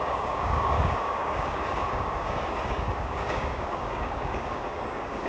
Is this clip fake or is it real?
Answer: fake